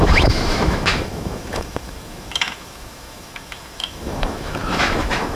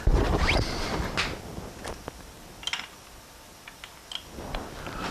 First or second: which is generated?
first